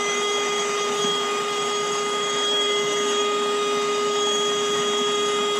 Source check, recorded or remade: remade